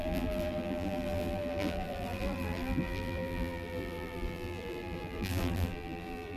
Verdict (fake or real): fake